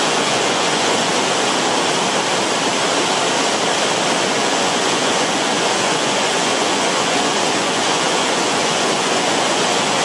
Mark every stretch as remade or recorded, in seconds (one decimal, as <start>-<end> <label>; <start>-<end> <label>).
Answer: 0.0-1.1 remade; 1.1-4.2 recorded; 4.2-10.0 remade